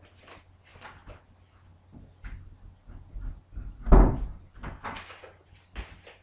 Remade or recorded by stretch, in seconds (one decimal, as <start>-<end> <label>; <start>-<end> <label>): 0.0-6.2 recorded

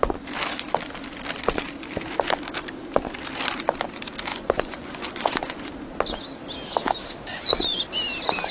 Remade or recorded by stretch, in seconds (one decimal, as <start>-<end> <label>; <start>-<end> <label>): 0.0-4.3 recorded; 4.3-5.7 remade; 5.7-7.3 recorded; 7.3-7.8 remade; 7.8-8.5 recorded

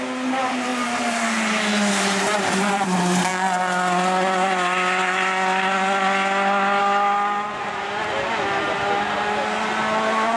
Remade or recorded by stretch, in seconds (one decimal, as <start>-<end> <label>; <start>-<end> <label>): 0.0-10.4 recorded